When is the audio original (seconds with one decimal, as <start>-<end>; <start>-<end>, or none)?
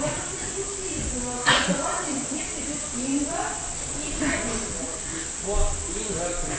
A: 0.0-1.4; 2.4-6.6